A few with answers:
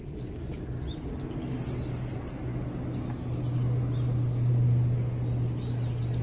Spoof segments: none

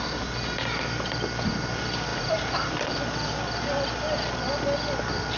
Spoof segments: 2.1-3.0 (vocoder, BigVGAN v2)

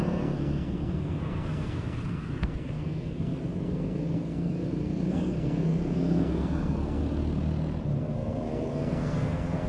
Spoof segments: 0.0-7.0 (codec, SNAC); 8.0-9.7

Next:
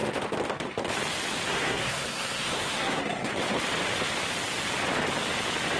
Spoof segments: 1.5-3.3 (codec, SNAC)

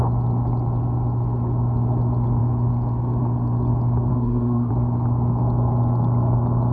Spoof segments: 4.1-4.7 (codec, SNAC)